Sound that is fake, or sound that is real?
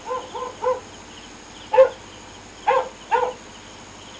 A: real